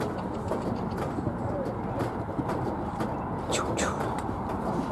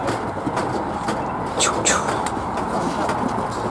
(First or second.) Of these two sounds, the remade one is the first